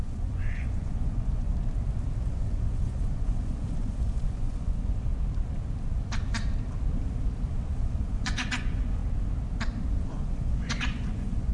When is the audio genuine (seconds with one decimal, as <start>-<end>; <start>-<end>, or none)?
1.5-2.3; 5.1-7.8; 9.0-9.9